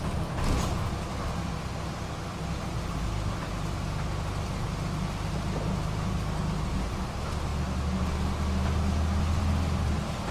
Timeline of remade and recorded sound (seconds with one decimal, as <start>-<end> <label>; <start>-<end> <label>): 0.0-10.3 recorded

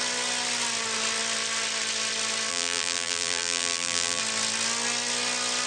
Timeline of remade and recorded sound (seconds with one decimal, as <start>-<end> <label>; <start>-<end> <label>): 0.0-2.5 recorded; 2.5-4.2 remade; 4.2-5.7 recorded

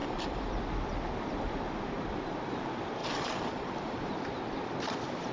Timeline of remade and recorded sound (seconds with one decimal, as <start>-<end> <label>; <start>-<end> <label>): 0.0-0.5 remade; 0.5-3.0 recorded; 3.0-4.1 remade; 4.1-5.3 recorded

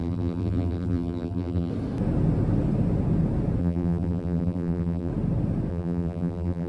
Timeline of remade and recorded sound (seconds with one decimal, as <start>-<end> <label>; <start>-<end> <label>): 0.0-1.7 remade; 1.7-3.6 recorded; 3.6-5.1 remade; 5.1-5.7 recorded; 5.7-6.7 remade